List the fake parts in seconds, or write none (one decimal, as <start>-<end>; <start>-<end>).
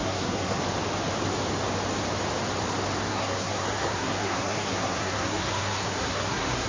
0.0-0.6; 3.1-6.7